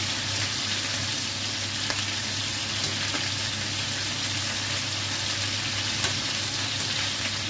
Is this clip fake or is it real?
real